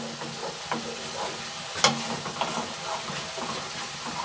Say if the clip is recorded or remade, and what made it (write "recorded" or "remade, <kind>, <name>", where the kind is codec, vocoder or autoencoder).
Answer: recorded